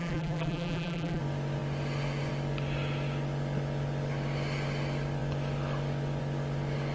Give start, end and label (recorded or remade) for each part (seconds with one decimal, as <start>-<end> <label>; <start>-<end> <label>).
0.0-1.2 remade; 1.2-6.9 recorded